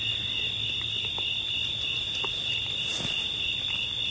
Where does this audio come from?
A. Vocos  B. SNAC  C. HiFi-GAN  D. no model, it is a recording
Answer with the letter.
D